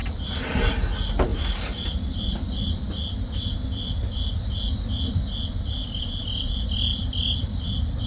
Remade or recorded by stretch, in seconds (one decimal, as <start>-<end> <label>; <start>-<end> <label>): 0.0-6.9 recorded; 6.9-7.4 remade; 7.4-8.1 recorded